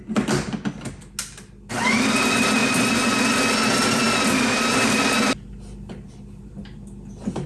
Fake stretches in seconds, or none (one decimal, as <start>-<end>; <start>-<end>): none

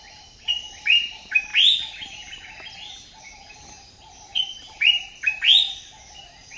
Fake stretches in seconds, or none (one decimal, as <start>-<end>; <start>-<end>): 1.5-5.0

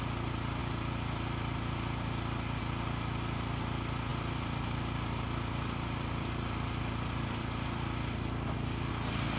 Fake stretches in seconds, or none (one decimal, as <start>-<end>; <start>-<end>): 4.1-8.9

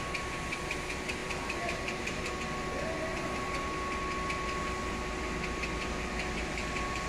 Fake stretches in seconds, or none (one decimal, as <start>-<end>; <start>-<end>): 1.2-2.3

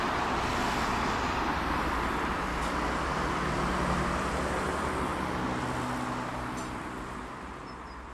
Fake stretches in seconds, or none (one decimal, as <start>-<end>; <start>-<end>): 0.0-5.1; 6.5-8.1

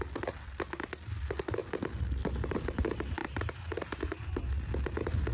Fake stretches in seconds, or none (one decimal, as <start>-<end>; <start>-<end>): 3.2-4.0

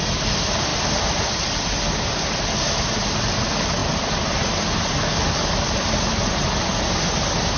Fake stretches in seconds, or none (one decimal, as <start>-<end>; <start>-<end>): 0.7-1.4; 3.8-6.8

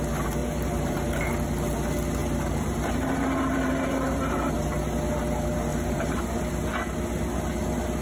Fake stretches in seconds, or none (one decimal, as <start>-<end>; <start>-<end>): 0.4-1.2; 2.2-4.5; 5.7-6.2